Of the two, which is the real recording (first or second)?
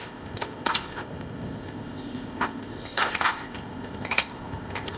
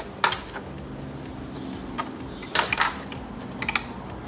second